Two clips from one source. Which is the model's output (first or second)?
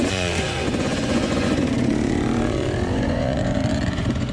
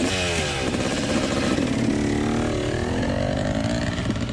first